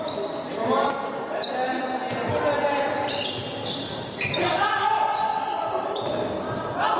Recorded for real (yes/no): yes